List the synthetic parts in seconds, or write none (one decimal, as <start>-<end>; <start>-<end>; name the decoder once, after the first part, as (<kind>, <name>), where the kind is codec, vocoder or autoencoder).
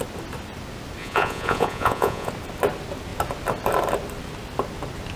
1.0-2.3 (vocoder, Vocos)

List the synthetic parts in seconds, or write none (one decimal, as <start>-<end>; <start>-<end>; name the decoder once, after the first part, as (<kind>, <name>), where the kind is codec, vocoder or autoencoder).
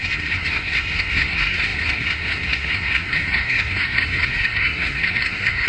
0.0-5.7 (codec, SNAC)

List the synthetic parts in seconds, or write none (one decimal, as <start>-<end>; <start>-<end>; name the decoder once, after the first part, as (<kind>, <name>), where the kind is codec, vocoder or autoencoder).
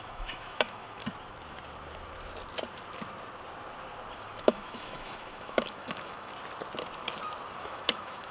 0.0-1.0 (autoencoder, DAC-VAE); 4.4-6.3; 7.6-8.3